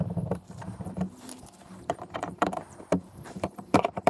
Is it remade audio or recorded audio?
remade